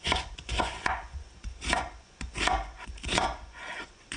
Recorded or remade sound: remade